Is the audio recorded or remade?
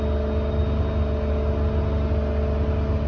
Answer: recorded